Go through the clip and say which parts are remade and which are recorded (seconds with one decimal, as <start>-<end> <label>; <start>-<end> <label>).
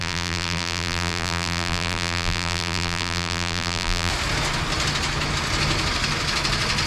0.0-4.1 remade; 4.1-6.9 recorded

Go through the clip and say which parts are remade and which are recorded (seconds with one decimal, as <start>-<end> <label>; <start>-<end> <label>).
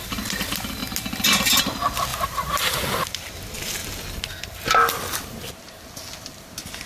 0.0-2.1 recorded; 2.1-2.7 remade; 2.7-6.9 recorded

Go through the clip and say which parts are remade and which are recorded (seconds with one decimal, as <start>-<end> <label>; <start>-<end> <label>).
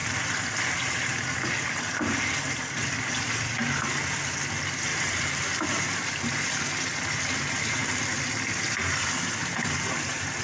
0.0-1.9 recorded; 1.9-3.0 remade; 3.0-4.9 recorded; 4.9-5.8 remade; 5.8-7.8 recorded; 7.8-8.3 remade; 8.3-10.4 recorded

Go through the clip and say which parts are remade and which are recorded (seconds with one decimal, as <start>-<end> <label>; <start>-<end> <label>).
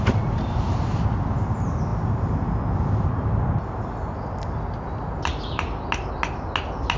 0.0-7.0 recorded